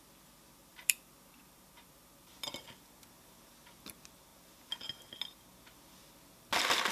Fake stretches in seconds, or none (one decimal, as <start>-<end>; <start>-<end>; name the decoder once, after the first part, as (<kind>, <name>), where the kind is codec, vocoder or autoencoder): 0.7-3.5 (vocoder, BigVGAN v2); 4.3-5.4